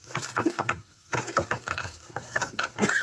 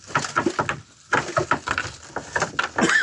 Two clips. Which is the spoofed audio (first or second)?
first